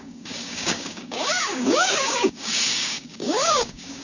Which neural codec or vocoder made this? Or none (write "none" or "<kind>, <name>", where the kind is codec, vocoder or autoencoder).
codec, DAC